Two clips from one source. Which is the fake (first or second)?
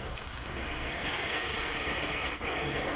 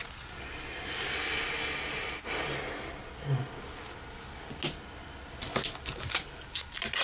first